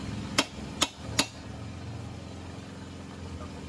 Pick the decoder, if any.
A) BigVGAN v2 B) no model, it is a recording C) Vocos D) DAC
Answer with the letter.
B